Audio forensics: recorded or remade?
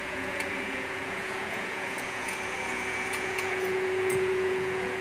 remade